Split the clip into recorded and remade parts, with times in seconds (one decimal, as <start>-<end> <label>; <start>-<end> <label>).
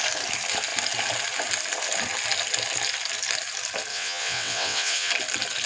0.0-3.9 recorded; 3.9-5.1 remade; 5.1-5.7 recorded